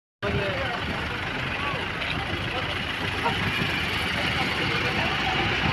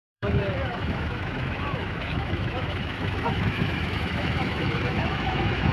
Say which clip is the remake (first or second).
second